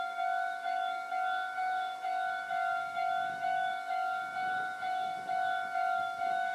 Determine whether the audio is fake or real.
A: fake